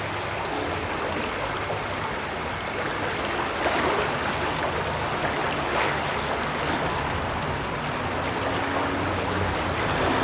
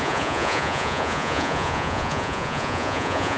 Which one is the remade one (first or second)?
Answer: second